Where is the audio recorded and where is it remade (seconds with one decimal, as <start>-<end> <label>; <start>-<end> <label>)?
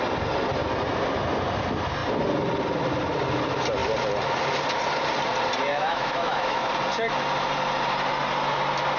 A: 0.0-5.7 recorded; 5.7-6.7 remade; 6.7-9.0 recorded